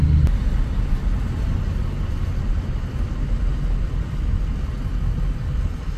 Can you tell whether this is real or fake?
real